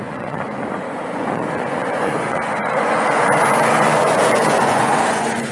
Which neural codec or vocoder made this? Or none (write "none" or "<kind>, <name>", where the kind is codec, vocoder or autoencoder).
vocoder, Vocos